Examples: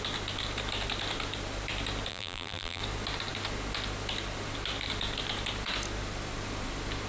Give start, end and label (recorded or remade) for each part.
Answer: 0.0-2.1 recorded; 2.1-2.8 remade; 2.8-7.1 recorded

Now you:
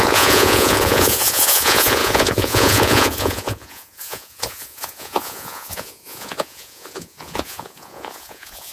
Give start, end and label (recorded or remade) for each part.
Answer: 0.0-8.7 remade

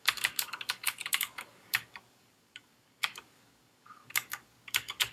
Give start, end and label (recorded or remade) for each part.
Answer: 0.0-5.1 remade

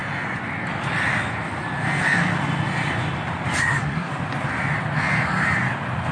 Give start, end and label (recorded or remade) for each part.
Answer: 0.0-3.6 recorded; 3.6-4.1 remade; 4.1-6.1 recorded

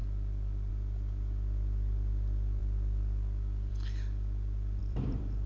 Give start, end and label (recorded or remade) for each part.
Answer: 0.0-0.7 recorded; 0.7-2.6 remade; 2.6-3.7 recorded; 3.7-5.5 remade

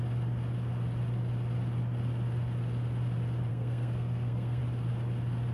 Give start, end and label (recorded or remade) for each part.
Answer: 0.0-3.5 recorded; 3.5-4.6 remade; 4.6-5.5 recorded

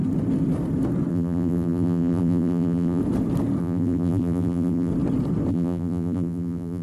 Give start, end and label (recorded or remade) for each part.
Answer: 0.0-1.1 recorded; 1.1-3.0 remade; 3.0-3.6 recorded; 3.6-4.9 remade; 4.9-5.5 recorded; 5.5-6.8 remade

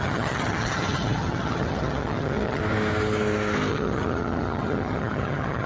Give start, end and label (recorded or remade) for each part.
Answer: 0.0-2.6 remade; 2.6-3.7 recorded; 3.7-5.7 remade